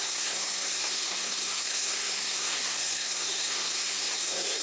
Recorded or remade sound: remade